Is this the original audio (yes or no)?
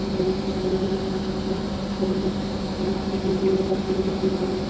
no